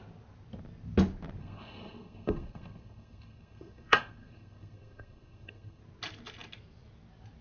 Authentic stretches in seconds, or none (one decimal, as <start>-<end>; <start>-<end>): 0.0-1.4; 5.8-7.4